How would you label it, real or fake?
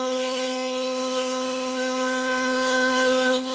fake